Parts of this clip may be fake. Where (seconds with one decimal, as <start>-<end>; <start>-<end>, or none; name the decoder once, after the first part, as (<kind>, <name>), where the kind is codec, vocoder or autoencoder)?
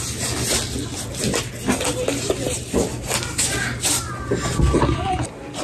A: none